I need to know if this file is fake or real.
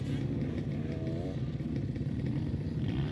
real